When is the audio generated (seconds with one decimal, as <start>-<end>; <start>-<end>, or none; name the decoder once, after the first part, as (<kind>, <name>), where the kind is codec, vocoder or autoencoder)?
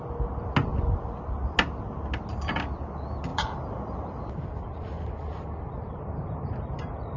0.7-1.2 (vocoder, BigVGAN v2); 3.3-6.0